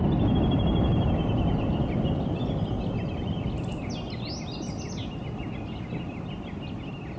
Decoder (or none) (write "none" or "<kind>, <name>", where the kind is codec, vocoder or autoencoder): none